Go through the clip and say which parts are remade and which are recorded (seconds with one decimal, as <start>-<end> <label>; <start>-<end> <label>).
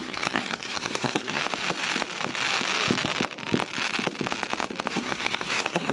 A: 0.0-1.4 remade; 1.4-4.9 recorded; 4.9-5.9 remade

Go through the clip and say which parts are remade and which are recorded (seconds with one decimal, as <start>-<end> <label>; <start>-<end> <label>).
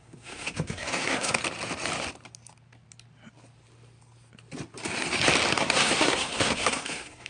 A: 0.0-1.4 remade; 1.4-5.5 recorded; 5.5-7.3 remade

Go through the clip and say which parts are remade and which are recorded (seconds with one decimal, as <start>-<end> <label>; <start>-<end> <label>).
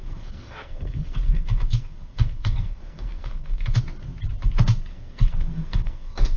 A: 0.0-3.8 remade; 3.8-4.9 recorded; 4.9-6.4 remade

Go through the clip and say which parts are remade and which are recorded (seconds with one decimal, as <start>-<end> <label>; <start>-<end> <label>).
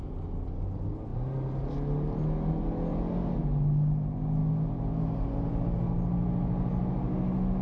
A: 0.0-7.6 recorded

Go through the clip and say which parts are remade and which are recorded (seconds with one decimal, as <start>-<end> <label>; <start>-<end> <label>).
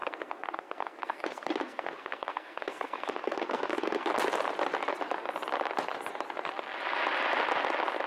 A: 0.0-4.1 remade; 4.1-8.1 recorded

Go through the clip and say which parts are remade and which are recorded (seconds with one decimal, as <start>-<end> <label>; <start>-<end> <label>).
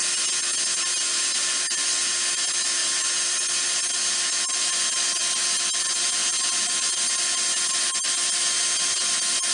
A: 0.0-9.5 recorded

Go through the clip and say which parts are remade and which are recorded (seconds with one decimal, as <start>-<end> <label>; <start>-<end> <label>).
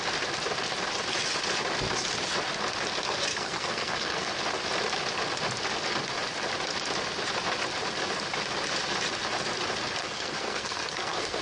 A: 0.0-3.3 recorded; 3.3-4.3 remade; 4.3-10.0 recorded; 10.0-11.4 remade